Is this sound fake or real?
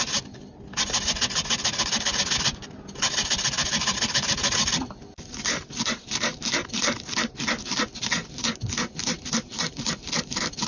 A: real